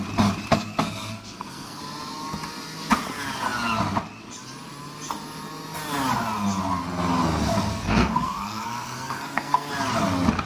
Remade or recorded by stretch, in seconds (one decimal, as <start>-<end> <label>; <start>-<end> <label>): 0.0-0.5 recorded; 0.5-1.8 remade; 1.8-7.7 recorded; 7.7-9.7 remade; 9.7-10.5 recorded